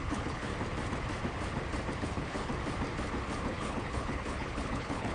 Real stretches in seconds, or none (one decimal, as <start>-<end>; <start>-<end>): 0.5-2.0; 2.5-3.5